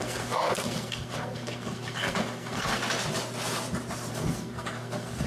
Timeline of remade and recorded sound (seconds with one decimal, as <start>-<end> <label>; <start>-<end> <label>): 0.0-2.8 remade; 2.8-4.1 recorded; 4.1-5.3 remade